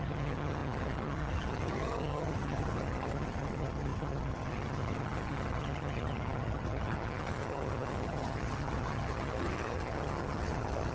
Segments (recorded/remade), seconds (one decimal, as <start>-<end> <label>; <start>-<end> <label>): 0.0-10.9 remade